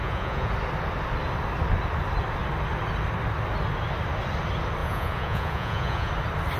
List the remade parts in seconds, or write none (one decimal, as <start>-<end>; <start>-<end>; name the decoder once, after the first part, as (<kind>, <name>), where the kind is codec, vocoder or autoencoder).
0.0-0.5 (vocoder, Vocos); 4.8-6.1